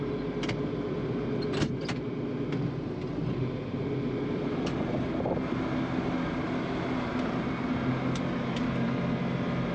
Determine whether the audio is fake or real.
real